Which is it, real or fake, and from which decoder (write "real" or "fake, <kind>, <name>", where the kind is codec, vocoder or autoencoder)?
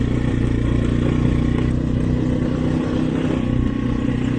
real